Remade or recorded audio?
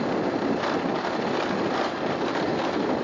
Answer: recorded